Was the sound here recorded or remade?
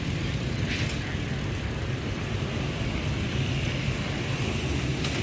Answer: recorded